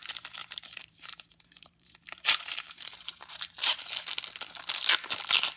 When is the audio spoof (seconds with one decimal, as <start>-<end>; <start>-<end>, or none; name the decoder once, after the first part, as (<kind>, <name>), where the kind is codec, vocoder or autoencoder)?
0.4-3.8 (vocoder, BigVGAN v2)

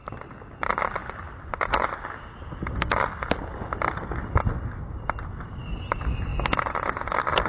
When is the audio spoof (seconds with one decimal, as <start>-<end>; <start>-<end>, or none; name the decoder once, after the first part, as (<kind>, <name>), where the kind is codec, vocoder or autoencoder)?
0.6-1.0 (vocoder, BigVGAN v2); 4.8-7.5

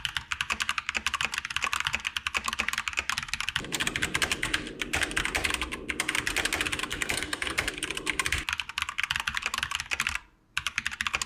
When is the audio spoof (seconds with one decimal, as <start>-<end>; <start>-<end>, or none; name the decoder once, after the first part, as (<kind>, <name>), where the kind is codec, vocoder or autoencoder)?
6.9-7.7 (codec, SNAC)

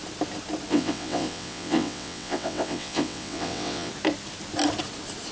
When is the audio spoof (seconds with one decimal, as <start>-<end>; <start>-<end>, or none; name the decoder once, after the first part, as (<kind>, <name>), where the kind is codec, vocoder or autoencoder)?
0.7-3.9 (vocoder, WaveNeXt)

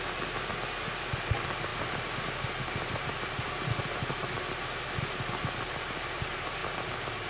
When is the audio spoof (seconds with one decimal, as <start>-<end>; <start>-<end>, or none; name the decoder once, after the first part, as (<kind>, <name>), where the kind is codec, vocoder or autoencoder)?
none